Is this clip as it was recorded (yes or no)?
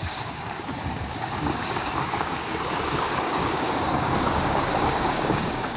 no